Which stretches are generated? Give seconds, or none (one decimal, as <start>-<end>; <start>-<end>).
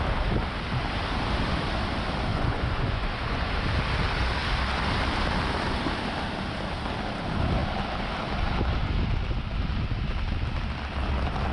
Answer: 2.3-3.5